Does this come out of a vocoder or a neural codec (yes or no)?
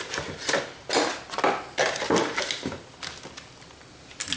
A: no